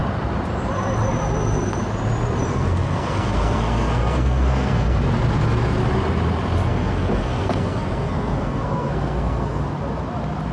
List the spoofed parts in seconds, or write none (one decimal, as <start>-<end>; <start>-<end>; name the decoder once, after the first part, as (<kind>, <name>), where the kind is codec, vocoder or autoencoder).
2.5-5.0 (codec, SNAC); 6.6-9.6